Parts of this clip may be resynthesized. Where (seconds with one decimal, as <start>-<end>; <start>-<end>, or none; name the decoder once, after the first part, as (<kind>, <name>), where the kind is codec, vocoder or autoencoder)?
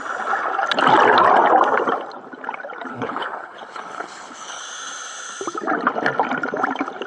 2.9-4.6 (codec, HILCodec)